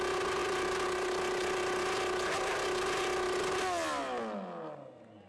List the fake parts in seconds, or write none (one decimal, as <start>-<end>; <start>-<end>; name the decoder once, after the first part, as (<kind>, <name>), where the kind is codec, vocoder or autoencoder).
none